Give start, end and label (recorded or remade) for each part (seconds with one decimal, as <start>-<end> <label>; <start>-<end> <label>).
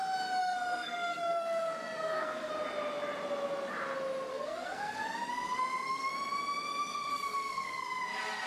0.0-0.4 recorded; 0.4-2.5 remade; 2.5-4.3 recorded; 4.3-6.1 remade; 6.1-7.1 recorded; 7.1-8.0 remade; 8.0-8.5 recorded